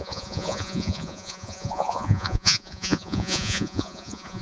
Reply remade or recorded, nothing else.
remade